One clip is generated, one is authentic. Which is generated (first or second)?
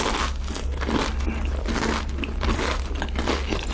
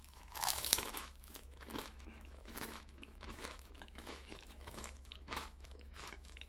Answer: second